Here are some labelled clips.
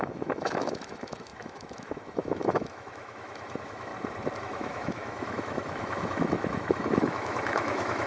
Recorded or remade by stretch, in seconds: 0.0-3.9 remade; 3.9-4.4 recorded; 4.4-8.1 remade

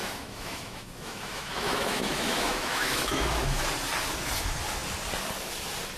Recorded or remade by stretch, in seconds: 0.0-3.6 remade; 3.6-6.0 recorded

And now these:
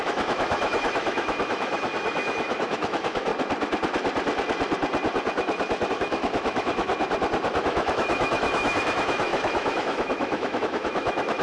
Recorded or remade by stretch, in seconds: 0.0-3.3 remade; 3.3-5.9 recorded; 5.9-6.9 remade; 6.9-7.6 recorded; 7.6-11.4 remade

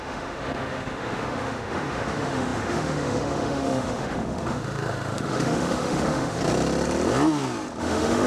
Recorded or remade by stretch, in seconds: 0.0-6.4 remade; 6.4-7.8 recorded; 7.8-8.3 remade